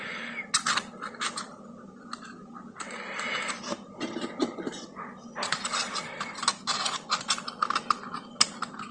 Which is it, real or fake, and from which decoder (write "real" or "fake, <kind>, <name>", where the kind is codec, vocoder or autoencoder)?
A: real